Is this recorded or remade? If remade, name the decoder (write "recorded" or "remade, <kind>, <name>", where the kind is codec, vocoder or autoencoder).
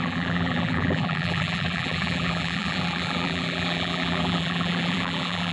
remade, vocoder, BigVGAN v2